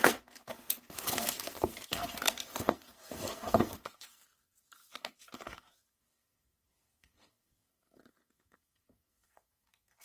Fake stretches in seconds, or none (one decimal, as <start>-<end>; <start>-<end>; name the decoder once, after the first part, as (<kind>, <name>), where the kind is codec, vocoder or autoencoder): 0.0-10.0 (codec, SNAC)